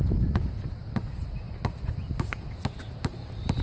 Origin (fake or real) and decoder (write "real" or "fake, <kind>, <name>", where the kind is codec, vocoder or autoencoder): real